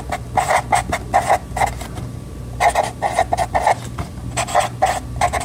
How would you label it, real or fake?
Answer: real